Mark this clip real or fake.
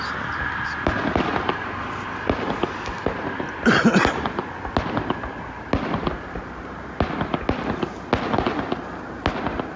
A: real